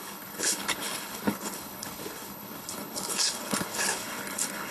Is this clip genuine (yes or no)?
no